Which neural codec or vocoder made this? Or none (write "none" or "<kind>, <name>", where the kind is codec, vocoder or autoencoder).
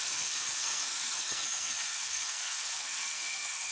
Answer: codec, SNAC